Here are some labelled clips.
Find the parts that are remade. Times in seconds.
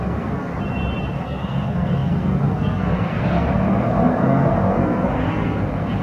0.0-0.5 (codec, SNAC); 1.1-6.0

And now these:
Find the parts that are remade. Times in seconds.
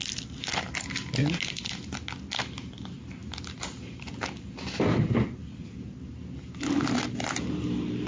none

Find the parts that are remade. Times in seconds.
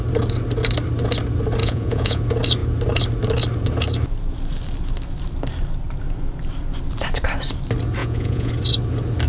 1.6-2.2 (vocoder, Vocos); 8.0-8.5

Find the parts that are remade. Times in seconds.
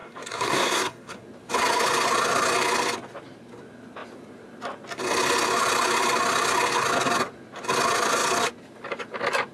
0.0-1.2 (codec, SNAC)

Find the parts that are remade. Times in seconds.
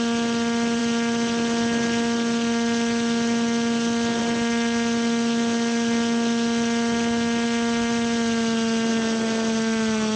none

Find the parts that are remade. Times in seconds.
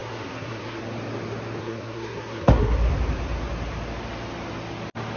0.0-0.8 (codec, SNAC); 1.6-2.9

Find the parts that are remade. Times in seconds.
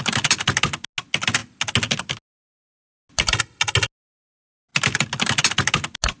none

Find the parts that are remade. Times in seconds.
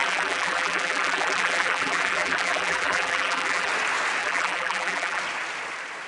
0.0-3.7 (vocoder, BigVGAN v2); 4.2-5.2